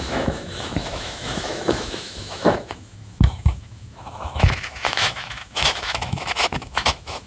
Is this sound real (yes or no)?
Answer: no